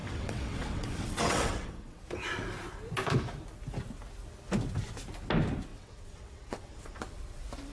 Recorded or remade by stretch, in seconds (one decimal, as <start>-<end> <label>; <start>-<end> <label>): 0.0-2.0 remade; 2.0-5.7 recorded; 5.7-7.0 remade; 7.0-7.7 recorded